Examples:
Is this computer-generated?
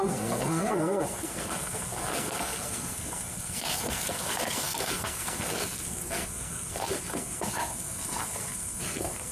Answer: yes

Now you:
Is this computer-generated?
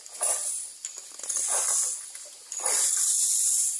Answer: no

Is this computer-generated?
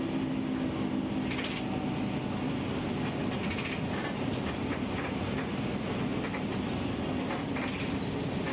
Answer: no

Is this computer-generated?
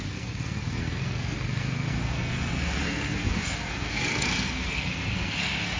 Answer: yes